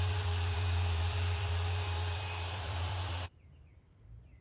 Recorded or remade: remade